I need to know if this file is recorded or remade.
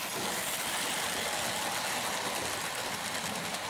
recorded